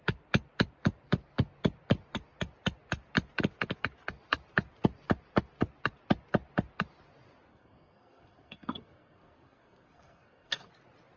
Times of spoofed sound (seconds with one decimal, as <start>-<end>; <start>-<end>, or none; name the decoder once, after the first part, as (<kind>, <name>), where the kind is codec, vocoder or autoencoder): 7.5-10.7 (codec, SNAC)